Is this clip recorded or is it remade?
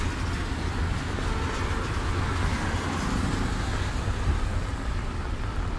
recorded